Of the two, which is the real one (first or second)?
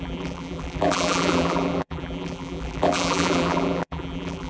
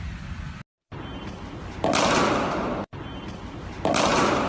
second